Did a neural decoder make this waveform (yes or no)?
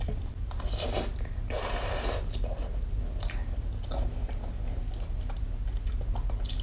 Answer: no